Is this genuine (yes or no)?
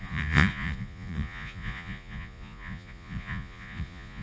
no